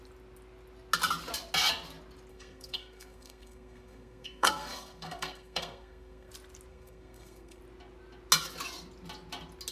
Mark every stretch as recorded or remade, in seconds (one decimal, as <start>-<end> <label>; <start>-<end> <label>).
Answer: 0.0-2.3 recorded; 2.3-6.3 remade; 6.3-6.7 recorded; 6.7-7.6 remade; 7.6-9.7 recorded